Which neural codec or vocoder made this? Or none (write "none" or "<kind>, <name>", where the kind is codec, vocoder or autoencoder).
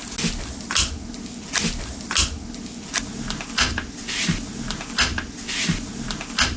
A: none